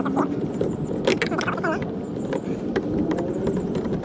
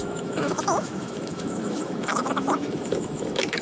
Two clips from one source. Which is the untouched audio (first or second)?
first